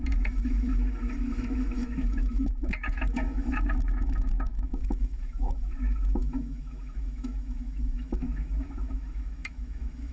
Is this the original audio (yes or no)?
no